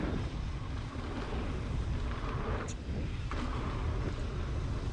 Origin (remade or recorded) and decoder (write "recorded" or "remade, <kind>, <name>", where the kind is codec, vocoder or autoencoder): recorded